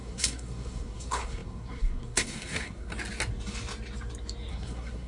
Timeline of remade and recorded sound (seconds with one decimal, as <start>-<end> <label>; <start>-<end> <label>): 0.0-2.9 remade; 2.9-4.5 recorded; 4.5-5.1 remade